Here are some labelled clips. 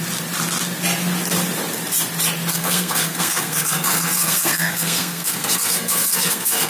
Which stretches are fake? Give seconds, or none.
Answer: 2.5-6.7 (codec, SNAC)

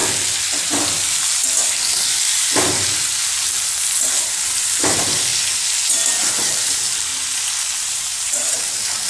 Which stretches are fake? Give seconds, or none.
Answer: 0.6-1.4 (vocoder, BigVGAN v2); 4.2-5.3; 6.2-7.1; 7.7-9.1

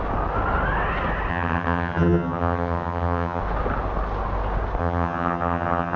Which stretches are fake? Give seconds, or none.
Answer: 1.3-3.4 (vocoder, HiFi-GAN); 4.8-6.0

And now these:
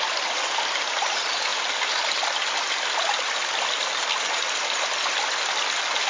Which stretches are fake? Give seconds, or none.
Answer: none